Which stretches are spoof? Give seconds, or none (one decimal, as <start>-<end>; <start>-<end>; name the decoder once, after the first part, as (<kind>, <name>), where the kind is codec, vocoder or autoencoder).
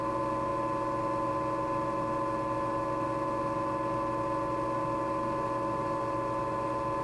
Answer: none